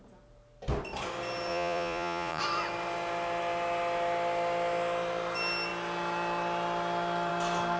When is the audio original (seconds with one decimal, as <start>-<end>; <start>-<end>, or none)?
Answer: 0.0-1.5; 2.4-7.8